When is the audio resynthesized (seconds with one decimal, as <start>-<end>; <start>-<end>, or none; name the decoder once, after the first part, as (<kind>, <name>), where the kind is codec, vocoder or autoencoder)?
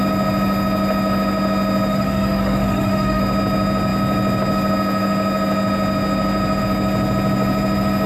1.9-3.2 (autoencoder, DAC-VAE)